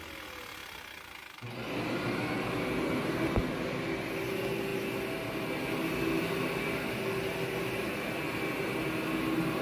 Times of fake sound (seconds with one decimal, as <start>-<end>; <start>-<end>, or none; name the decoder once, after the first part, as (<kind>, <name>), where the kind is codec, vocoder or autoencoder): none